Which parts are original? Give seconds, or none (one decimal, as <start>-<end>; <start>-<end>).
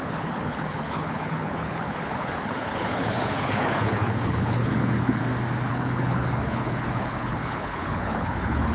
5.2-5.7